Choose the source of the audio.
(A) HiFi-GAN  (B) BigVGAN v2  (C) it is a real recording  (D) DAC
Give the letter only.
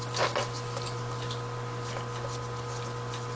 C